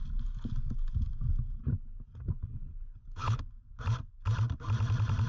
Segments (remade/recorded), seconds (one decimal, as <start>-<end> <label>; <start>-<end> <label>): 0.0-1.6 recorded; 1.6-3.4 remade; 3.4-5.3 recorded